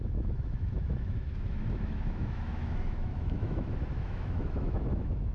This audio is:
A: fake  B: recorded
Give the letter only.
A